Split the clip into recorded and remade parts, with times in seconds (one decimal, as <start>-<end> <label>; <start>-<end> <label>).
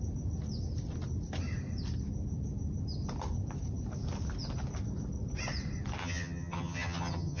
0.0-6.0 recorded; 6.0-7.4 remade